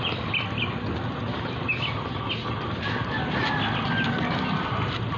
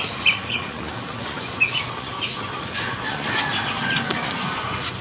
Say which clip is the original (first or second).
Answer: first